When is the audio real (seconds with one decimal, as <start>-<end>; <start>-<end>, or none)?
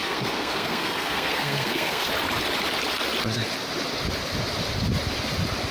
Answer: 2.1-5.7